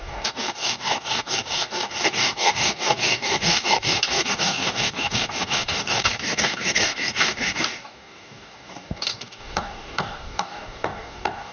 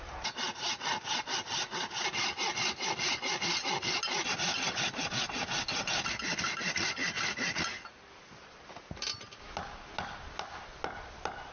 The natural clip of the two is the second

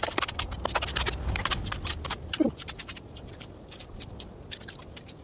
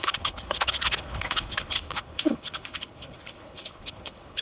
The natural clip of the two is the first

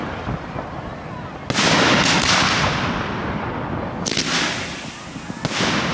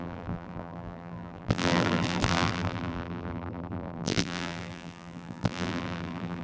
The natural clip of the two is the first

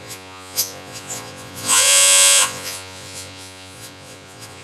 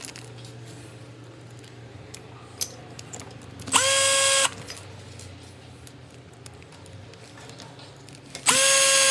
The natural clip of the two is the second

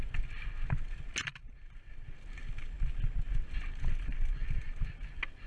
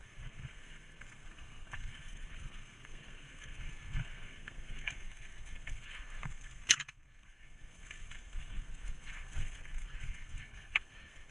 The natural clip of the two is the first